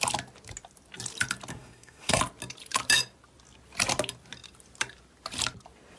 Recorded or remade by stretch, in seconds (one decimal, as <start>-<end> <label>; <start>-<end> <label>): 0.0-1.5 recorded; 1.5-2.2 remade; 2.2-6.0 recorded